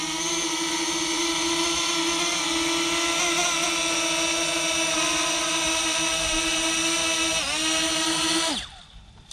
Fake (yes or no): no